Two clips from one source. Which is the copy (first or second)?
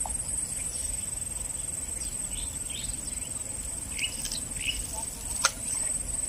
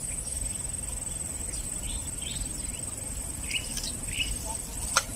second